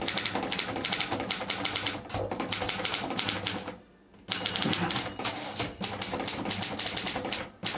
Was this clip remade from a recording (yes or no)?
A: no